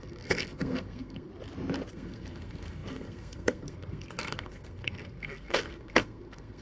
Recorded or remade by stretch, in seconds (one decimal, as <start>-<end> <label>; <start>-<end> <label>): 0.0-1.3 remade; 1.3-1.9 recorded; 1.9-6.6 remade